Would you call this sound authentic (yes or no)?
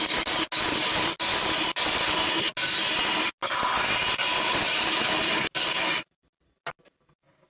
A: yes